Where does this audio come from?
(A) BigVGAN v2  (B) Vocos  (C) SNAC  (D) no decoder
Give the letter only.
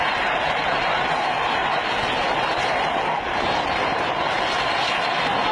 D